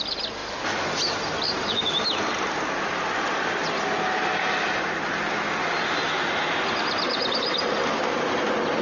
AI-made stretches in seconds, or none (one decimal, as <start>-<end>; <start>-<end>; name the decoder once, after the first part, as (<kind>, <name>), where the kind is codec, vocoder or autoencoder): none